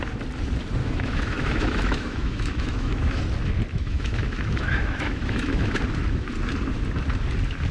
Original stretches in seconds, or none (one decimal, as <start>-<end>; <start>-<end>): 0.0-0.8; 3.2-3.7; 5.8-7.7